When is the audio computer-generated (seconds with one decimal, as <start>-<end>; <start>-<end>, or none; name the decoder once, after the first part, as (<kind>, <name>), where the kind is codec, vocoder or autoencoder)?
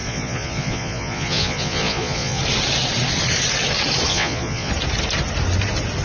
0.0-2.4 (vocoder, Vocos); 4.1-4.7